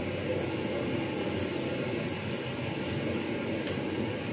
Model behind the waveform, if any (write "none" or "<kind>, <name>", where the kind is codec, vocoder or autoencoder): none